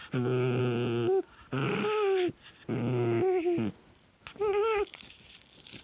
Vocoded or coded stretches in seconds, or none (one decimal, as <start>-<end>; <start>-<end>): none